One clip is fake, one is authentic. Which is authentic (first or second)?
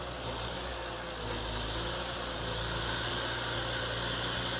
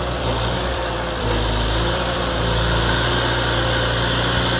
first